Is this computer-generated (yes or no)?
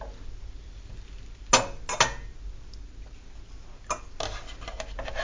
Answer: no